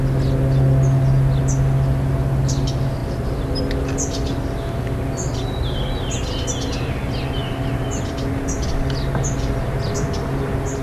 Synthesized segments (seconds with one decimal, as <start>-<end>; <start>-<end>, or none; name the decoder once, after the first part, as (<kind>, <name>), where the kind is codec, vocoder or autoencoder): none